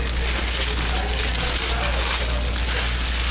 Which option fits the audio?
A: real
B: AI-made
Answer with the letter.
A